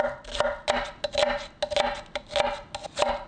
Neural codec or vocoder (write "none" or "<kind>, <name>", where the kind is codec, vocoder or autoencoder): none